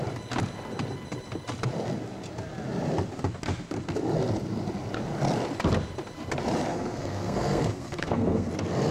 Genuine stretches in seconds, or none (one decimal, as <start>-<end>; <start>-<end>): 0.0-6.7; 8.5-8.9